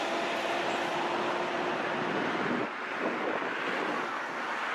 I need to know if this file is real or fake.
real